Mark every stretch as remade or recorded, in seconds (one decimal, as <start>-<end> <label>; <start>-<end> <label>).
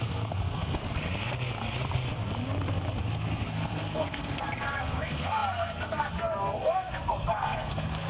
0.0-0.8 remade; 0.8-3.0 recorded; 3.0-8.1 remade